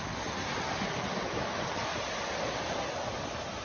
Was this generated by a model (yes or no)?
no